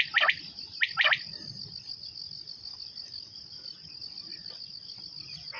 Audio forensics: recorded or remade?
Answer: recorded